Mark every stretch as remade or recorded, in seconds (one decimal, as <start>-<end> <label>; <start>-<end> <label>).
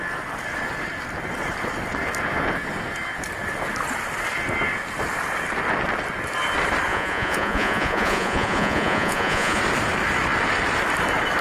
0.0-6.9 recorded; 6.9-9.6 remade; 9.6-11.4 recorded